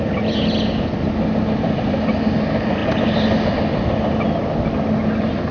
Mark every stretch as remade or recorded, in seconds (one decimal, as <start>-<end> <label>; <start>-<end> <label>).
0.0-5.5 recorded